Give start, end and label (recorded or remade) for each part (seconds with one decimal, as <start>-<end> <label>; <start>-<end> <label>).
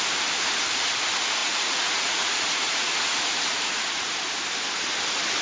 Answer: 0.0-1.4 recorded; 1.4-4.1 remade; 4.1-5.4 recorded